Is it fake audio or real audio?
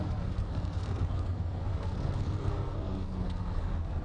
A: fake